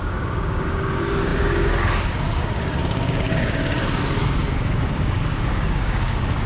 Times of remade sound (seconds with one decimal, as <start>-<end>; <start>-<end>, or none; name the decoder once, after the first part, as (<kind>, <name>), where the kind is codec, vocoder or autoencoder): 0.0-6.5 (codec, DAC)